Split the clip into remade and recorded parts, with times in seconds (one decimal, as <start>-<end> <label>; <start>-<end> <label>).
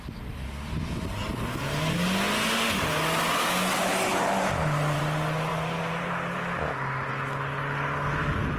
0.0-4.1 recorded; 4.1-5.0 remade; 5.0-5.5 recorded; 5.5-6.4 remade; 6.4-8.6 recorded